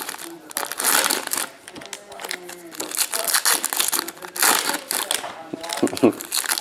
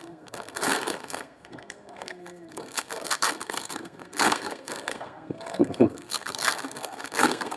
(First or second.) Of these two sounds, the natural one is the first